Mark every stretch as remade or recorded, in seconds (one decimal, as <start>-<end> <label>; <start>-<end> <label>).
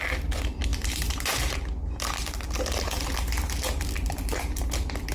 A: 0.0-5.1 recorded